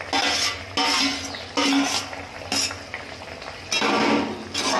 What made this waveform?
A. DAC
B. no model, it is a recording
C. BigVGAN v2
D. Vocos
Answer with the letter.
B